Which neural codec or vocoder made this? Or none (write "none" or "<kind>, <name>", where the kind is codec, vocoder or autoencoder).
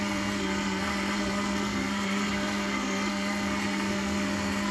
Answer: codec, SNAC